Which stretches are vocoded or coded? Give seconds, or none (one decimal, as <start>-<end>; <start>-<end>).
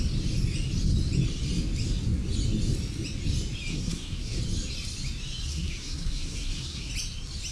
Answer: 3.7-4.4; 5.5-6.9